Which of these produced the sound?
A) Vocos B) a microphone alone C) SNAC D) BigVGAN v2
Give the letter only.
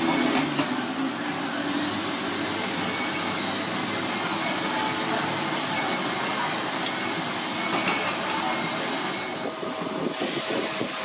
B